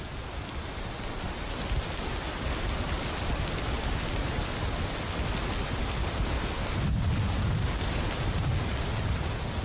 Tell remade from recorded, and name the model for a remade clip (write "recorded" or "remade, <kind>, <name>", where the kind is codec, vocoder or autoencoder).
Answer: recorded